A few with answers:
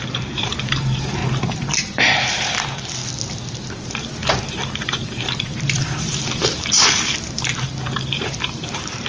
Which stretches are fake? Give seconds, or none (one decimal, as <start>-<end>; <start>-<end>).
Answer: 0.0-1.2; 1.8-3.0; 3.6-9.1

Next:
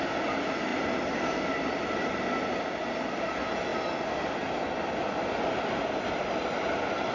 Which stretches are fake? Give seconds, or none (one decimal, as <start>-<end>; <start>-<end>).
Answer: none

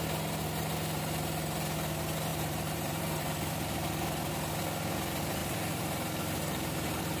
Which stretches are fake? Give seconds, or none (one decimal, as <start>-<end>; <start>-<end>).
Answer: 2.3-3.2; 5.4-7.2

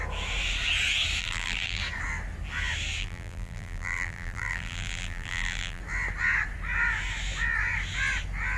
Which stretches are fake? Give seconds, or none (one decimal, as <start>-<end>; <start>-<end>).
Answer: 1.2-1.8; 3.0-5.8

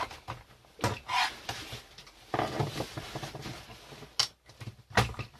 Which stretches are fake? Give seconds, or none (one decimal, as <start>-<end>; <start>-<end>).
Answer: none

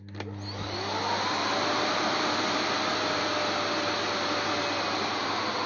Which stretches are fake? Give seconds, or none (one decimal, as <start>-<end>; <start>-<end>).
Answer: none

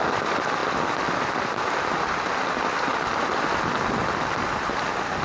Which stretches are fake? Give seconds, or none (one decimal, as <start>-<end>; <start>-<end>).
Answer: none